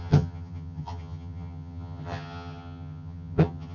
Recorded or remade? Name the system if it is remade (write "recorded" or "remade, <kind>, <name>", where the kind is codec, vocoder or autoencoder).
remade, vocoder, HiFi-GAN